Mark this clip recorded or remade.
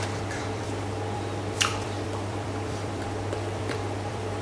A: remade